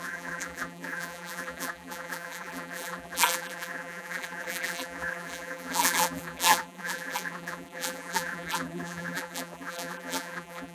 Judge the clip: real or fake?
fake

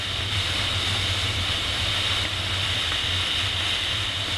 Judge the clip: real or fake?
real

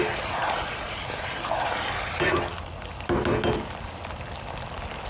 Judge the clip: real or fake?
real